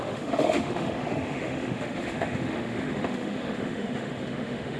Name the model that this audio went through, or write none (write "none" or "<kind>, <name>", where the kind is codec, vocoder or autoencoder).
autoencoder, DAC-VAE